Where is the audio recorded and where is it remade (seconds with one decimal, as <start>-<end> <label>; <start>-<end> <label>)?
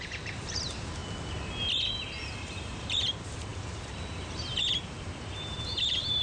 0.0-1.0 remade; 1.0-1.9 recorded; 1.9-6.2 remade